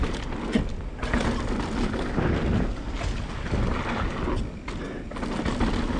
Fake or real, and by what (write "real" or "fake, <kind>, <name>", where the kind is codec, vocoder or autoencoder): real